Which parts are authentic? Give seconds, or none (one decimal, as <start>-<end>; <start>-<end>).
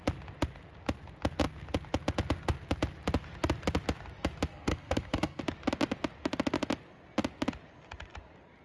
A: 0.0-4.5; 5.4-8.6